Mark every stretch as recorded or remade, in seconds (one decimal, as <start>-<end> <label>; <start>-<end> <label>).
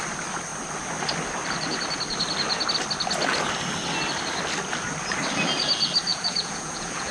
0.0-6.1 recorded; 6.1-7.1 remade